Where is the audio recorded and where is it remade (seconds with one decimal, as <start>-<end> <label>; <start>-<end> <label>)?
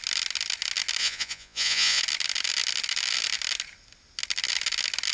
0.0-1.0 recorded; 1.0-2.0 remade; 2.0-5.1 recorded